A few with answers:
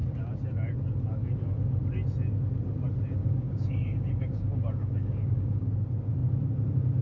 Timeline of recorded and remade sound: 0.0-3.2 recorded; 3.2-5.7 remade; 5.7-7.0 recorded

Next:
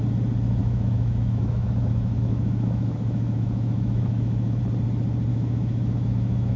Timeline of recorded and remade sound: 0.0-0.6 recorded; 0.6-4.6 remade; 4.6-5.3 recorded; 5.3-6.6 remade

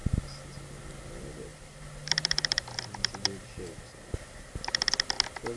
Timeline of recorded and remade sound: 0.0-1.5 recorded; 1.5-4.9 remade; 4.9-5.6 recorded